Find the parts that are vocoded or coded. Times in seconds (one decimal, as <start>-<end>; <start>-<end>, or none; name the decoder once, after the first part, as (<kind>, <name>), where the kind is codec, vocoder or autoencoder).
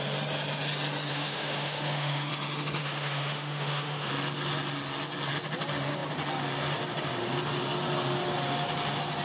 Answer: 1.1-2.3 (autoencoder, DAC-VAE); 2.8-4.1